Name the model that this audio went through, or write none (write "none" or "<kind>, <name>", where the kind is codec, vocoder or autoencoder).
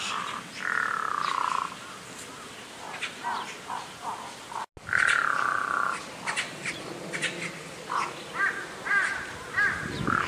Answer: none